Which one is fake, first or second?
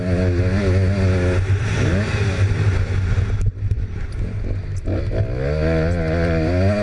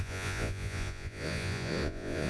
second